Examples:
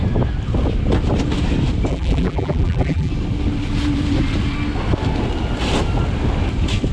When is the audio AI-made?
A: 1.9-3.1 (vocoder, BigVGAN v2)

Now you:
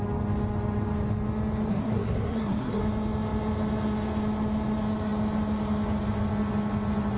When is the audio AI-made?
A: 1.7-2.8 (codec, SNAC)

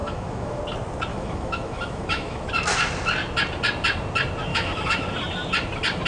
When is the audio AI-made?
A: 0.0-0.6 (autoencoder, DAC-VAE); 1.1-2.5; 4.5-5.0

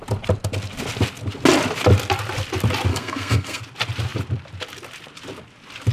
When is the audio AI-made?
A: 2.9-3.6 (codec, SNAC)

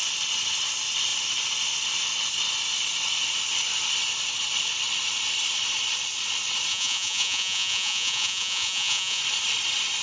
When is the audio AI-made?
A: 6.7-9.2 (vocoder, Vocos)

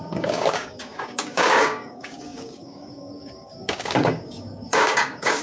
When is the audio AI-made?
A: 0.0-5.4 (codec, DAC)

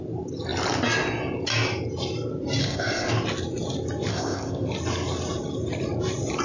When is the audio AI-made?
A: 2.6-3.1 (codec, ZipCodec); 4.1-4.7